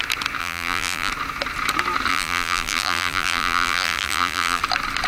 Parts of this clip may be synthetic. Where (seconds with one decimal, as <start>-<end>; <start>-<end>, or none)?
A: 0.4-1.1; 2.1-4.6